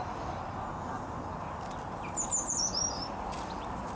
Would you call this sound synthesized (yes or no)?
no